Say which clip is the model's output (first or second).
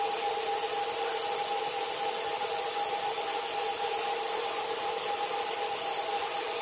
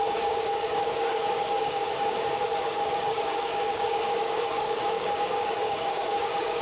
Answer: second